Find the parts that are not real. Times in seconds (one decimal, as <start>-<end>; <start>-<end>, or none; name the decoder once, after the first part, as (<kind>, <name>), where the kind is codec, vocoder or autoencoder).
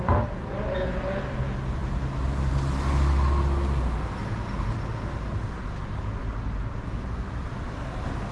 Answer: none